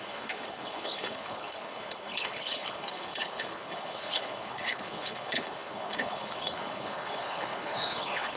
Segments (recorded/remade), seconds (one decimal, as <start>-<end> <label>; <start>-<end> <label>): 0.0-8.4 remade